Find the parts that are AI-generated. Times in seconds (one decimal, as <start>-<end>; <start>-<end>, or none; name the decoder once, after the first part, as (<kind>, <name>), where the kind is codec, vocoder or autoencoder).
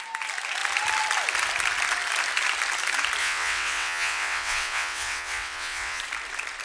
3.2-6.0 (vocoder, WaveNeXt)